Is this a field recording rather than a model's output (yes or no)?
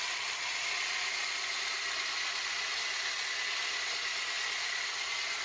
yes